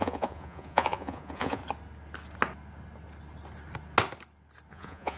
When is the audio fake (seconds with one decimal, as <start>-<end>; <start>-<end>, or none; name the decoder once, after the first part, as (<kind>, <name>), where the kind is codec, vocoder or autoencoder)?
0.0-1.6 (vocoder, Vocos); 4.7-5.2